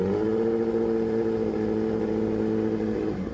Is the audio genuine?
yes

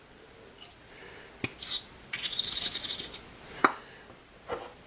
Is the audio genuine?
yes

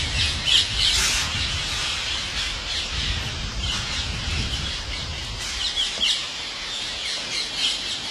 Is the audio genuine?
no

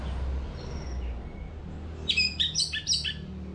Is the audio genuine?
yes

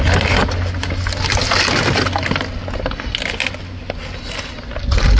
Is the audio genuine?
yes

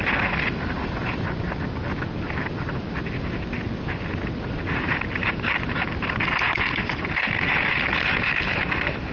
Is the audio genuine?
yes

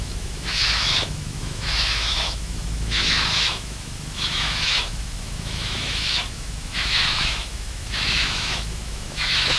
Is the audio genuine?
no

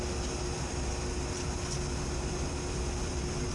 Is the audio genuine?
yes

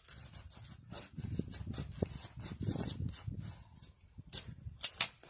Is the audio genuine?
yes